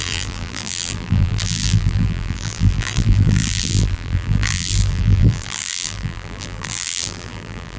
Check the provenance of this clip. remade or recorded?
remade